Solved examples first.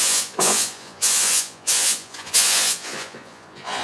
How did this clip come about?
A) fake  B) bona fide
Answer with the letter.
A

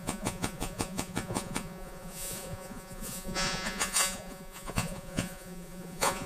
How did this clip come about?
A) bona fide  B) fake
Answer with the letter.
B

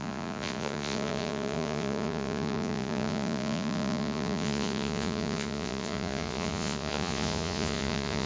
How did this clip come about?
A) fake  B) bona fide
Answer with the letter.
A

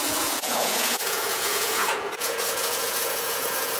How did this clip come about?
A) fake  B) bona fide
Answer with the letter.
A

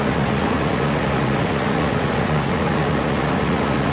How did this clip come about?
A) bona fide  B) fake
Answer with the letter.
B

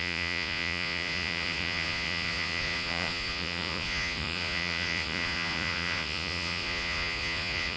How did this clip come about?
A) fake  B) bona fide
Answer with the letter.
A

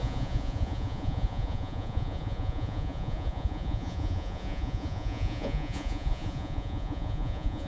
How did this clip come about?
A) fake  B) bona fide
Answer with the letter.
A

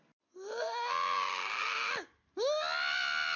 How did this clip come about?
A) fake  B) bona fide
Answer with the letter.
B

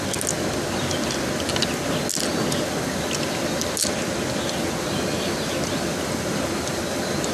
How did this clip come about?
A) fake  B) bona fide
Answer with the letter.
B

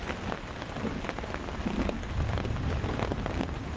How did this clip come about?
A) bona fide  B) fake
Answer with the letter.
A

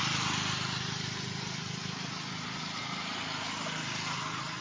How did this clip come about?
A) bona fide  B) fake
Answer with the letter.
A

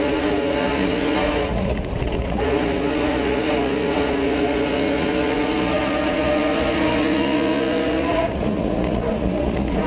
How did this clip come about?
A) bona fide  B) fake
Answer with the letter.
B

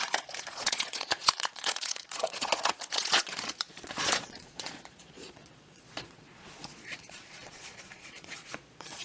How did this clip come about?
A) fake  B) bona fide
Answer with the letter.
A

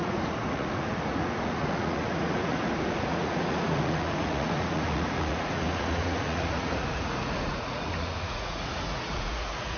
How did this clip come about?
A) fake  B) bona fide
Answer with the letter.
A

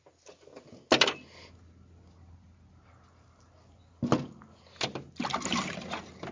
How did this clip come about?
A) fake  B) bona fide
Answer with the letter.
B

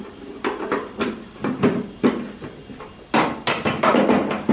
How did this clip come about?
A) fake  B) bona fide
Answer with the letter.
B